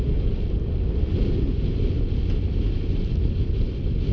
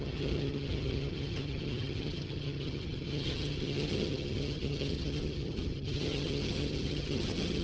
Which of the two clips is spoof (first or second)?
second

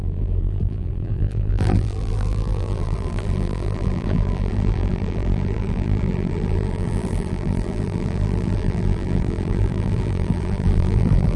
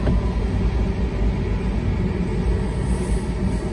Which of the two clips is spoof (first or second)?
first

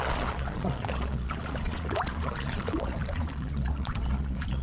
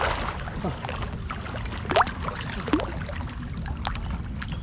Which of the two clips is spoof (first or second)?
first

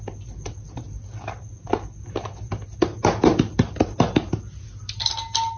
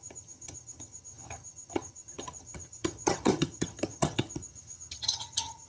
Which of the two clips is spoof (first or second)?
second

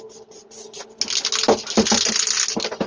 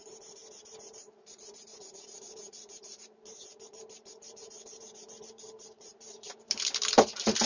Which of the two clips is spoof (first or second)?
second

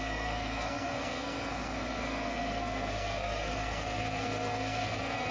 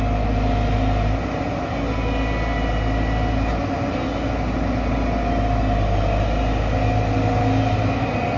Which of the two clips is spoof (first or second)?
first